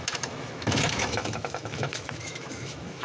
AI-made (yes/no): yes